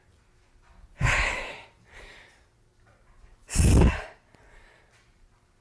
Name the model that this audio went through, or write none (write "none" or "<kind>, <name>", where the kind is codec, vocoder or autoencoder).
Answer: none